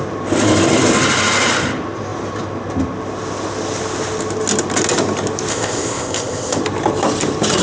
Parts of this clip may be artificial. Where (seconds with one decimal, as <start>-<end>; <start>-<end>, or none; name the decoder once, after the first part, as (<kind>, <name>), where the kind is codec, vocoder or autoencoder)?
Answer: 5.5-6.6 (codec, ZipCodec)